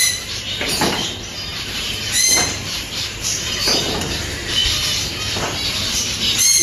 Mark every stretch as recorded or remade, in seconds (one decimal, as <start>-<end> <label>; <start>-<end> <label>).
0.0-4.6 remade; 4.6-5.7 recorded; 5.7-6.6 remade